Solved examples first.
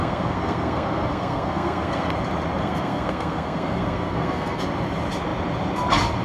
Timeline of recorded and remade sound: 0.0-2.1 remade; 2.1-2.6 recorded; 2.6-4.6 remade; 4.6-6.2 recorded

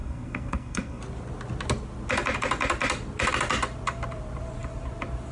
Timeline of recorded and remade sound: 0.0-1.0 remade; 1.0-5.3 recorded

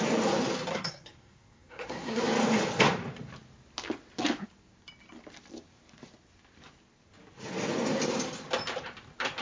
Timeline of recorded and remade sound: 0.0-0.7 recorded; 0.7-2.2 remade; 2.2-9.4 recorded

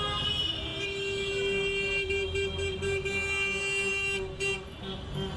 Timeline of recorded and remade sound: 0.0-5.4 recorded

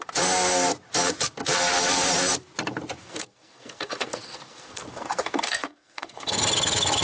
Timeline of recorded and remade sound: 0.0-3.0 recorded; 3.0-6.4 remade; 6.4-7.0 recorded

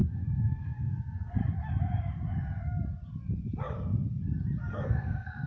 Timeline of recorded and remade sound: 0.0-1.4 remade; 1.4-4.7 recorded; 4.7-5.5 remade

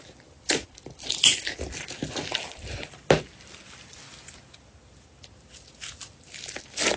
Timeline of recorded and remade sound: 0.0-7.0 recorded

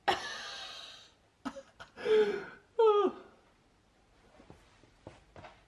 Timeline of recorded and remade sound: 0.0-5.7 recorded